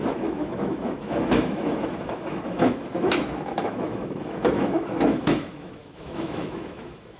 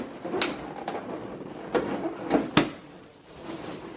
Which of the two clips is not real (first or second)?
first